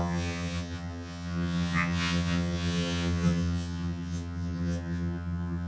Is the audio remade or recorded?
remade